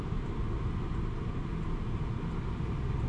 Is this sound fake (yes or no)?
no